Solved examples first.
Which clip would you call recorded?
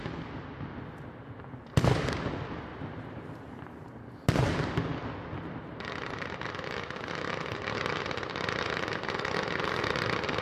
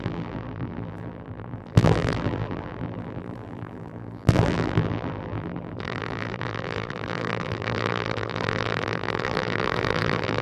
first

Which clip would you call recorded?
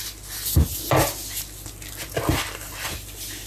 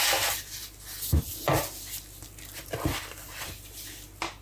first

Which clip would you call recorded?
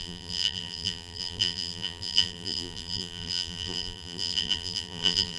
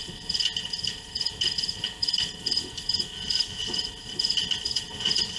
second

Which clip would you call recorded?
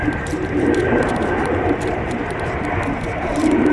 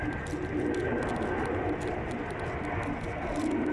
second